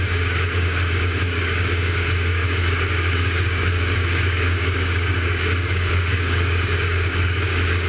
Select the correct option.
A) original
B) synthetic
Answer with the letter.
B